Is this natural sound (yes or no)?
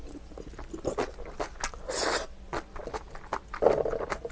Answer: yes